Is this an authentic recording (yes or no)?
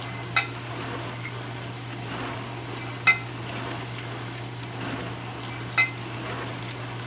yes